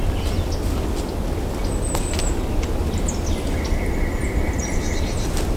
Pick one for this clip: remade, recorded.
recorded